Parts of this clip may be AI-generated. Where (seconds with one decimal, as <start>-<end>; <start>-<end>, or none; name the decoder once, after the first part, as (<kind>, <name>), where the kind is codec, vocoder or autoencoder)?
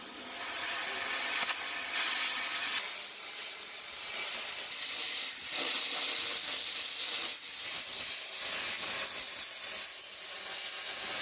2.5-3.8 (vocoder, BigVGAN v2)